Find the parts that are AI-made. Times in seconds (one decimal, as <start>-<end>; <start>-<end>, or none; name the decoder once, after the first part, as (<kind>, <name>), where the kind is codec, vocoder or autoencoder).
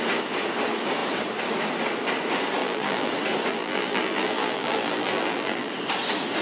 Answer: 2.6-3.1 (vocoder, BigVGAN v2); 3.5-5.7